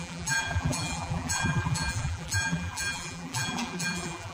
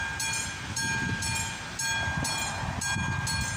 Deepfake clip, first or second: first